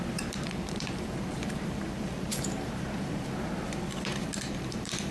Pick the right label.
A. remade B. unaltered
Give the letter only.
A